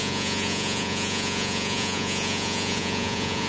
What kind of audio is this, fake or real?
fake